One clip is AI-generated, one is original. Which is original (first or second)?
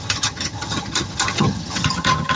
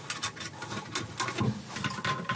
second